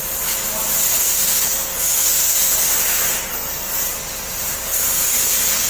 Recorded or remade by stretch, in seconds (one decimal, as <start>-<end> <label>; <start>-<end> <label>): 0.0-0.9 recorded; 0.9-2.7 remade; 2.7-3.3 recorded; 3.3-3.9 remade; 3.9-4.7 recorded; 4.7-5.7 remade